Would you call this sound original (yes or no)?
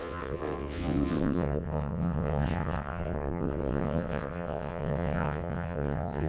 no